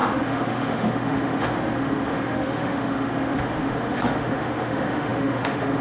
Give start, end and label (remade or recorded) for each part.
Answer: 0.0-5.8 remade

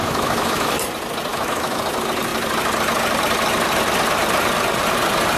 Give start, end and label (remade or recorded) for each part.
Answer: 0.0-0.7 remade; 0.7-1.3 recorded; 1.3-1.8 remade; 1.8-5.4 recorded